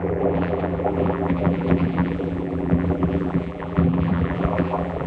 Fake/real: fake